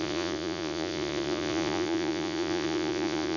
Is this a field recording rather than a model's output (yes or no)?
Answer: no